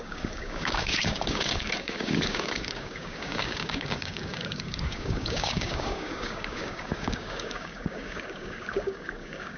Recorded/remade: remade